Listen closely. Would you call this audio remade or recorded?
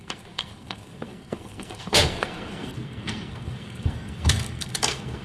remade